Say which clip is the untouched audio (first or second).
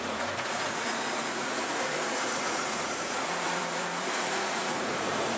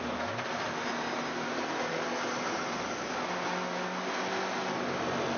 second